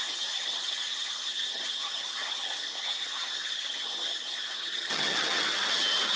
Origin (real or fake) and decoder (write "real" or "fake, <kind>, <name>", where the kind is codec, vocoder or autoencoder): fake, vocoder, HiFi-GAN